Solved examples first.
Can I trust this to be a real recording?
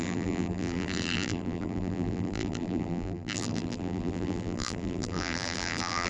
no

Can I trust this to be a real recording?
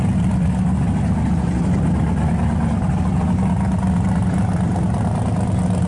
yes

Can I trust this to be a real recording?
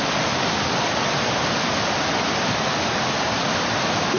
yes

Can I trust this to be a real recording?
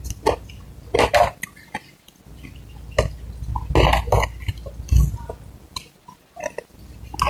yes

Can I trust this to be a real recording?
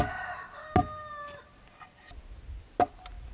yes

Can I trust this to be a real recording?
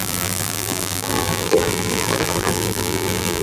no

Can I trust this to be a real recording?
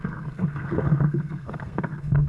no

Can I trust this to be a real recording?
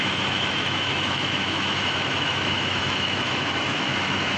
no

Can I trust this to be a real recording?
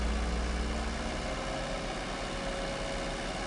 yes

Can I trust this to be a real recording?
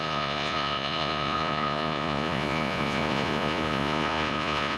no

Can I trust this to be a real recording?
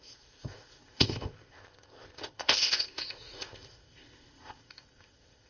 no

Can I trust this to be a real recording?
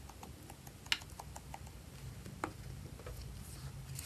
yes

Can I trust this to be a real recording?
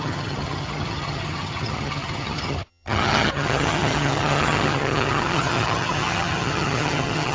no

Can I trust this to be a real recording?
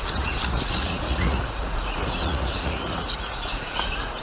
no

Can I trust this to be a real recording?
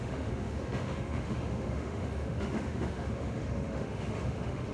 no